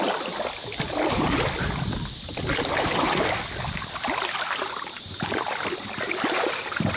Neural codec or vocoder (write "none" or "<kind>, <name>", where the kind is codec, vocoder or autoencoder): none